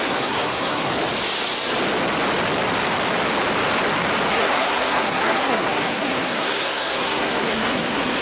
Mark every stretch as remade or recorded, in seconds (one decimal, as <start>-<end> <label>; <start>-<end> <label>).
0.0-0.9 remade; 0.9-4.3 recorded; 4.3-8.2 remade

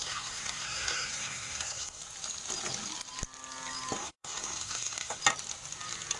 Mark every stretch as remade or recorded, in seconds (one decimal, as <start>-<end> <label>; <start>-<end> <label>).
0.0-2.0 remade; 2.0-4.0 recorded; 4.0-5.2 remade; 5.2-6.2 recorded

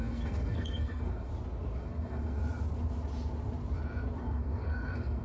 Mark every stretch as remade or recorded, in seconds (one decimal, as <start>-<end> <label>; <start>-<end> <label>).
0.0-1.3 remade; 1.3-1.8 recorded; 1.8-2.4 remade; 2.4-4.2 recorded; 4.2-5.2 remade

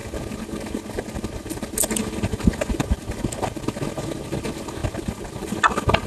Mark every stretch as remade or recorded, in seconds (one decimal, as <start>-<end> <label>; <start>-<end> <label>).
0.0-6.1 recorded

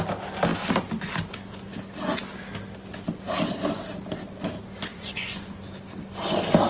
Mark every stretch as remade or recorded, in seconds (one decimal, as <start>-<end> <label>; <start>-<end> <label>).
0.0-4.9 recorded; 4.9-5.5 remade; 5.5-6.7 recorded